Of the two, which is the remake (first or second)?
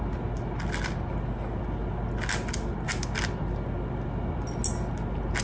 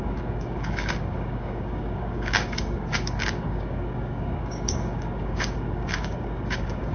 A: second